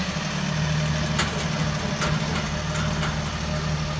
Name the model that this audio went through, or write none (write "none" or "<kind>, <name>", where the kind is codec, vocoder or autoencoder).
none